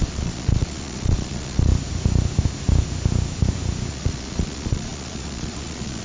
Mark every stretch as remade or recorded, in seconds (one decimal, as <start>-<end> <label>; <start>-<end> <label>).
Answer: 0.0-1.7 remade; 1.7-3.9 recorded; 3.9-6.0 remade